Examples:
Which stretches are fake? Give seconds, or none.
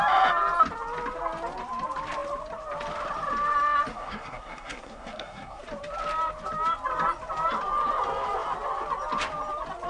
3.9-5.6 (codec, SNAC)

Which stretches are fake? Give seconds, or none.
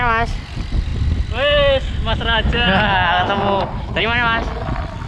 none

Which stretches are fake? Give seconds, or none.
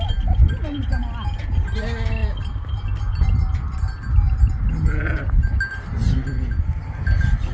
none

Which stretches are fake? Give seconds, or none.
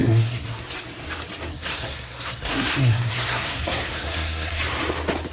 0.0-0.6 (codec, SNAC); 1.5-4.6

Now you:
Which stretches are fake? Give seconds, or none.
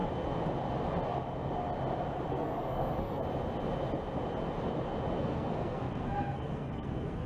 2.3-3.2 (codec, SNAC); 5.2-7.3